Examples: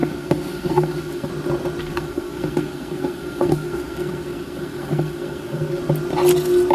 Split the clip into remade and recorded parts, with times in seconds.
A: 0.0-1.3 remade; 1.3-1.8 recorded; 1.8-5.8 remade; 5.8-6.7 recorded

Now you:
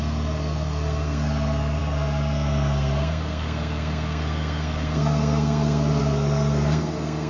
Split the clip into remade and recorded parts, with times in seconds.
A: 0.0-7.3 remade

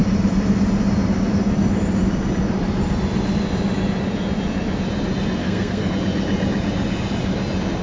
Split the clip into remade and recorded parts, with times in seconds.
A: 0.0-5.4 recorded; 5.4-5.9 remade; 5.9-7.8 recorded

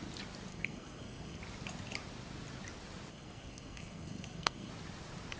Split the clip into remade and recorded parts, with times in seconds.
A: 0.0-0.5 recorded; 0.5-1.4 remade; 1.4-3.1 recorded; 3.1-4.7 remade; 4.7-5.4 recorded